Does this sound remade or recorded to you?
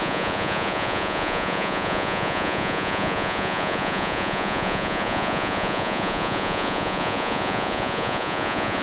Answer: remade